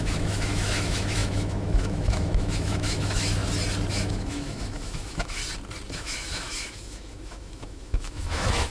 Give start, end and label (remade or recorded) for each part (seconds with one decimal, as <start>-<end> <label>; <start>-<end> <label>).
0.0-3.4 remade; 3.4-3.9 recorded; 3.9-5.4 remade; 5.4-5.9 recorded; 5.9-8.7 remade